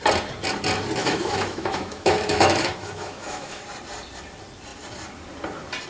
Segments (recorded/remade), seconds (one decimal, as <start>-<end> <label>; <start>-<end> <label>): 0.0-1.0 recorded; 1.0-3.6 remade; 3.6-5.9 recorded